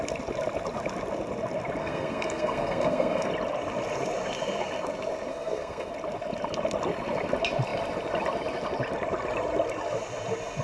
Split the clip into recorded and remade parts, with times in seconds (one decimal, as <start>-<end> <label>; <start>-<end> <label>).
0.0-1.8 recorded; 1.8-3.3 remade; 3.3-5.3 recorded; 5.3-5.9 remade; 5.9-10.6 recorded